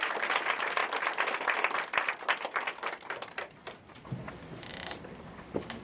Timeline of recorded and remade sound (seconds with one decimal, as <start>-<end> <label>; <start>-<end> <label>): 0.0-5.8 recorded